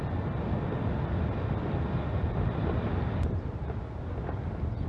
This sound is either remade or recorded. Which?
recorded